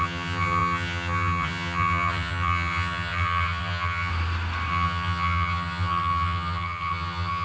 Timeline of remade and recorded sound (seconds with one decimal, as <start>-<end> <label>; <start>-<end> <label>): 0.0-4.1 remade; 4.1-4.7 recorded; 4.7-7.4 remade